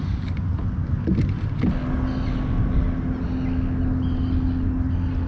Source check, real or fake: real